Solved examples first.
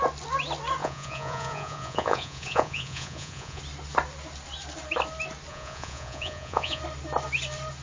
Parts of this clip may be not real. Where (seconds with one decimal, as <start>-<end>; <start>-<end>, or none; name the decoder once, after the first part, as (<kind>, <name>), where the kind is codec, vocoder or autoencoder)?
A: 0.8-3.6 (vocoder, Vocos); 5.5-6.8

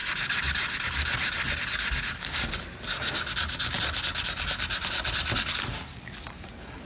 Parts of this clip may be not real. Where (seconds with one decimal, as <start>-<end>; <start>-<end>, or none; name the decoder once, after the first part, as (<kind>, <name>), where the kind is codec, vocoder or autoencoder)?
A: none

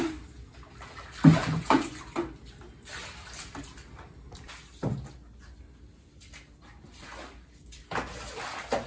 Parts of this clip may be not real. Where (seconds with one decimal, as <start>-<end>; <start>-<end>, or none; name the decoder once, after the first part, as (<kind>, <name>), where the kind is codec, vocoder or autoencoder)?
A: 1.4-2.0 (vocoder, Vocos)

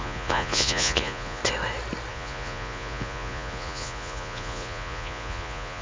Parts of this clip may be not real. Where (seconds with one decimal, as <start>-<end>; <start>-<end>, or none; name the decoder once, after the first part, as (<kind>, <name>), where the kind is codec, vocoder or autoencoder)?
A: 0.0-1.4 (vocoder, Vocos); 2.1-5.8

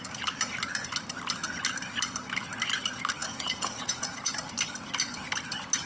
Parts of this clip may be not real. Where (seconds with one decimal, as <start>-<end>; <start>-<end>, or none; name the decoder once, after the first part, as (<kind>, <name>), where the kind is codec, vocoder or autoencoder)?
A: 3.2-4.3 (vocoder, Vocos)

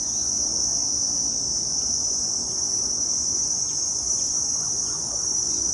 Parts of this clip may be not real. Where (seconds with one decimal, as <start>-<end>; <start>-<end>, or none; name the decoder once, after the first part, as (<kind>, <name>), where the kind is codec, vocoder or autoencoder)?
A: 0.0-0.5 (vocoder, Vocos); 1.6-5.7

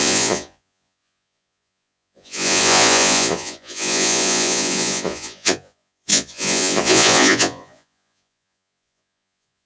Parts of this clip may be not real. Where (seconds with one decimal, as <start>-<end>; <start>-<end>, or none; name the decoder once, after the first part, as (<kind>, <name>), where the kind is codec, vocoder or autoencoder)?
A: 0.0-9.7 (vocoder, Vocos)

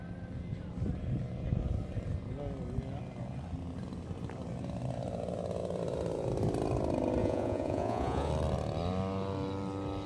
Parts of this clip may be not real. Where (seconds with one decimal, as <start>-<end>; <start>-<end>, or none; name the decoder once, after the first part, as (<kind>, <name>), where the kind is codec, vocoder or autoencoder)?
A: 7.2-8.3 (vocoder, Vocos)